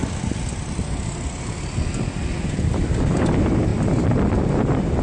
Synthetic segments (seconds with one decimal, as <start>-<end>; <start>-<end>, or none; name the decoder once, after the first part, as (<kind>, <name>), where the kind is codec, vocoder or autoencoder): none